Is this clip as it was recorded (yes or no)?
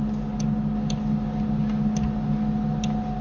yes